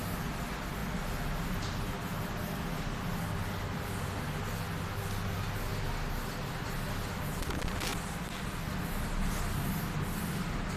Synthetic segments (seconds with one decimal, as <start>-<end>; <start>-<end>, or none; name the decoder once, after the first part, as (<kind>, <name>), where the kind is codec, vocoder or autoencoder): 7.9-8.7 (vocoder, BigVGAN v2)